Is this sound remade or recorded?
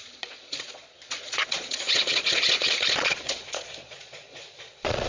remade